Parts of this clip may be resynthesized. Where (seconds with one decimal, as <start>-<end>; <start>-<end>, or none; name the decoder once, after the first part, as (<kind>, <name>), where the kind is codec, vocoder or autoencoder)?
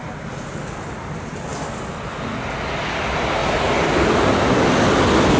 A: none